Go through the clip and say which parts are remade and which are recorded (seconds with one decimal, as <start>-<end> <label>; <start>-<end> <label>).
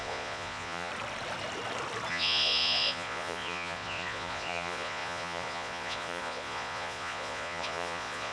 0.0-0.9 remade; 0.9-2.1 recorded; 2.1-8.3 remade